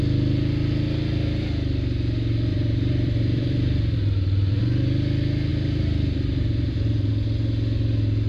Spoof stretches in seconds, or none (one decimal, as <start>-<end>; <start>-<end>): 2.5-4.6; 5.5-7.1

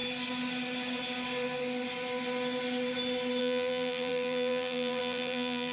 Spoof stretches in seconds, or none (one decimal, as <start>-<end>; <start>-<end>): 3.4-5.7

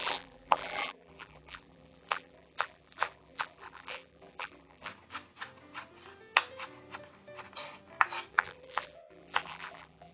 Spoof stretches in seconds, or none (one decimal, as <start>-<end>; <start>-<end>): 0.0-4.9; 8.3-10.1

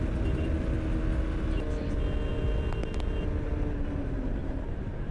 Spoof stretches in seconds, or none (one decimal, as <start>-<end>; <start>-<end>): 4.4-5.1

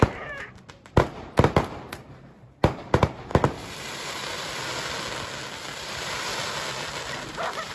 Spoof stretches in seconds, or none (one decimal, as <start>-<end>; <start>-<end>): 0.0-3.3; 5.8-6.3; 7.3-7.7

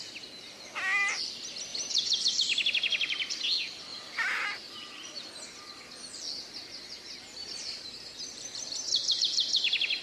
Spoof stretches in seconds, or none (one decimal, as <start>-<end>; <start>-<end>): 1.7-2.3; 3.9-5.3; 7.4-9.2

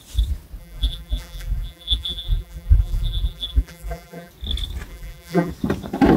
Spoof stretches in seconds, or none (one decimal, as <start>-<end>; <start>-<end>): 0.6-4.3; 4.9-5.5

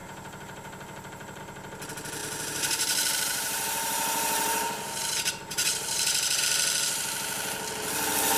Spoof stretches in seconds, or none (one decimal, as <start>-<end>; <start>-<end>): 0.0-1.4; 2.2-6.4